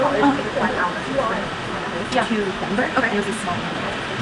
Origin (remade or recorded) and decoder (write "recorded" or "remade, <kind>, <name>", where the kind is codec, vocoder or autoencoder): recorded